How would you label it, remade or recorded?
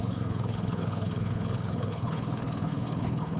remade